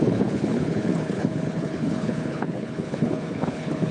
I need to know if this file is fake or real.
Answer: fake